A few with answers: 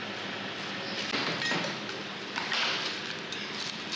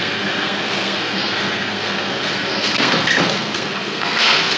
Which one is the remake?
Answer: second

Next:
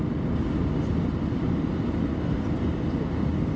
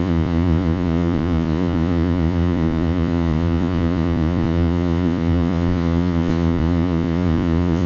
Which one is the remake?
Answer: second